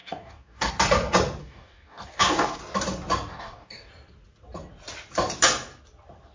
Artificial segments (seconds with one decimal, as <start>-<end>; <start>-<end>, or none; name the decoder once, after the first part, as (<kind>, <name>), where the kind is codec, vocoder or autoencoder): 0.0-0.7 (codec, DAC); 1.4-2.6; 3.3-3.9